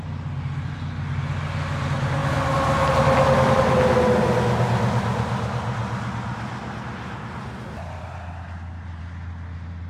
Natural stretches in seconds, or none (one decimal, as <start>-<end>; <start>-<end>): 0.0-9.9

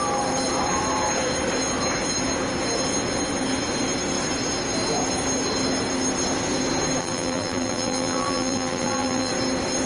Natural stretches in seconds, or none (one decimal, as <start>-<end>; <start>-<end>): 0.0-7.0; 9.3-9.9

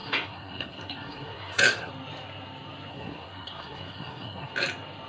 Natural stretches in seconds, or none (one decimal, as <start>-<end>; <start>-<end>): 1.9-2.9; 4.5-5.1

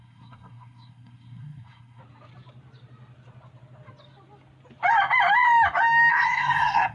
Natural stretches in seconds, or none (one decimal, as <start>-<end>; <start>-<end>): 2.0-6.1

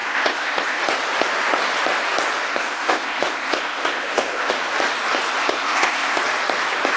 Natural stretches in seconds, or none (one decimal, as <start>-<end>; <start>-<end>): 0.8-2.5; 4.5-5.4; 6.2-7.0

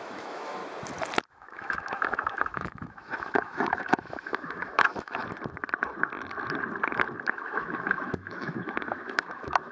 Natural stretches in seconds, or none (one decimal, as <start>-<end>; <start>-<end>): 0.6-1.3; 5.2-7.3

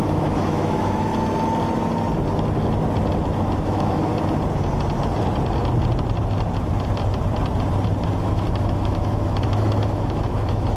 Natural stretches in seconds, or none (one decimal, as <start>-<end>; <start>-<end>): 1.1-3.6; 4.1-8.2